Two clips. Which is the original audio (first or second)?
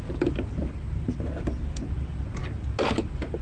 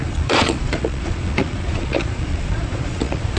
first